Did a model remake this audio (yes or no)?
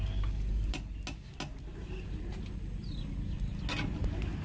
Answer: no